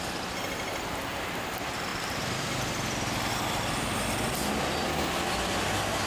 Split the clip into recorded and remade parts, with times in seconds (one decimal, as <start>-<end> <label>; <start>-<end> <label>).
0.0-1.9 recorded; 1.9-2.5 remade; 2.5-6.1 recorded